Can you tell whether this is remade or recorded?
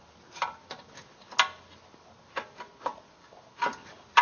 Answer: recorded